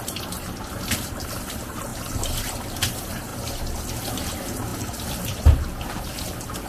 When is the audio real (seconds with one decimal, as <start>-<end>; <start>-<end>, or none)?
3.3-3.9